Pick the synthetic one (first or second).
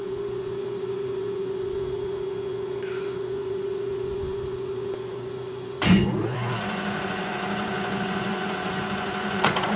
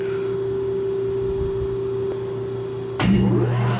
first